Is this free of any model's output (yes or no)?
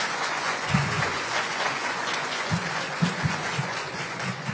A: no